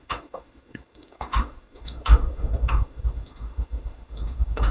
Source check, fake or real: fake